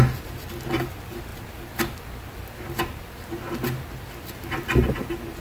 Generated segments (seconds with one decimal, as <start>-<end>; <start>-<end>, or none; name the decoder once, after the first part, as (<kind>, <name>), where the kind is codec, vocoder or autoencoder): none